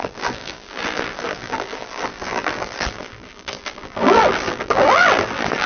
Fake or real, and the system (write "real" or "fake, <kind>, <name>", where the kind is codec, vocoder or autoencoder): fake, vocoder, BigVGAN v2